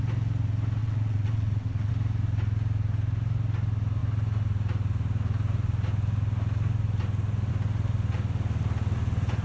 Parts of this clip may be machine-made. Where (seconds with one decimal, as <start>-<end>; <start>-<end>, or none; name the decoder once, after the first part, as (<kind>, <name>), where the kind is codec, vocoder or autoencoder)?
0.8-1.9 (vocoder, WaveNeXt)